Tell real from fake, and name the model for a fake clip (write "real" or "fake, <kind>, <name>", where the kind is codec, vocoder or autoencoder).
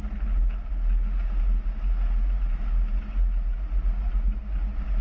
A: real